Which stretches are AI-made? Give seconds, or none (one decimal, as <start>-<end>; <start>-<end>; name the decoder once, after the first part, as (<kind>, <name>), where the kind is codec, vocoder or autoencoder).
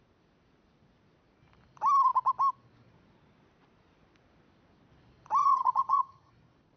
5.4-6.3 (vocoder, HiFi-GAN)